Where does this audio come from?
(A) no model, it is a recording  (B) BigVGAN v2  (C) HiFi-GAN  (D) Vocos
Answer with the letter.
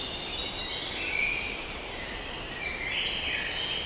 A